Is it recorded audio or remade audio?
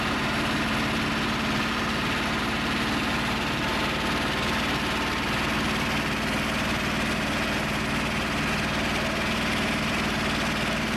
recorded